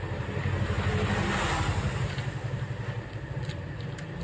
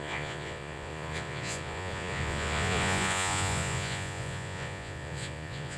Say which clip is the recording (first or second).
first